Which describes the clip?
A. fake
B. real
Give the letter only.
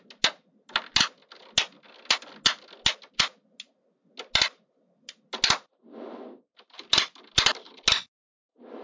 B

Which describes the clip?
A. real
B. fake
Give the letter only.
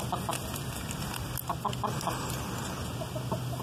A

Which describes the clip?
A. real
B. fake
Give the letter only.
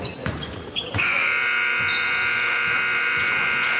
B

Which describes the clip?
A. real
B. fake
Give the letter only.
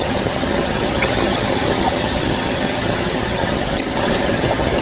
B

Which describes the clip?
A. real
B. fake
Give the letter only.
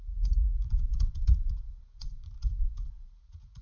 B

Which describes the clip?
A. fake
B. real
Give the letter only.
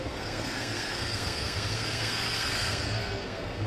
A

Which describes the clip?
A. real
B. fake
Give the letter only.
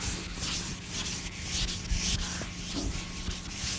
A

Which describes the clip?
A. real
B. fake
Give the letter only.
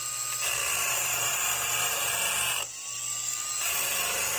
A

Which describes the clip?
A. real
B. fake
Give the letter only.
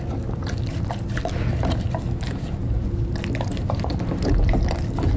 A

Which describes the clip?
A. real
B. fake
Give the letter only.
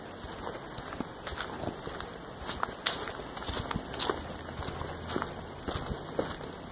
A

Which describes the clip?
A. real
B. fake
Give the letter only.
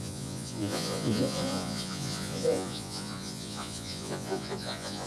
B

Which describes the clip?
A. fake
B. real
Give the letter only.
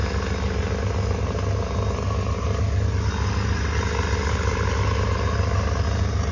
B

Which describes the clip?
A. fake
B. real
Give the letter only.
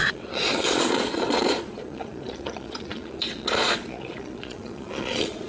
A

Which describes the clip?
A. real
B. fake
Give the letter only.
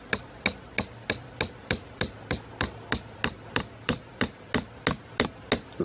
A